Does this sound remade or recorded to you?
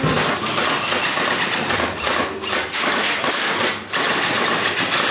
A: recorded